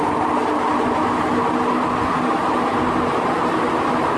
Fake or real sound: real